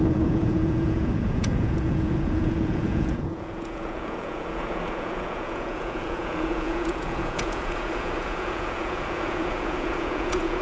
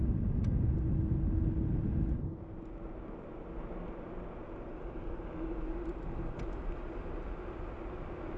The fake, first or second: first